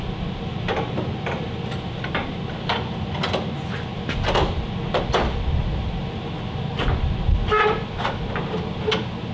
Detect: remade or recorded recorded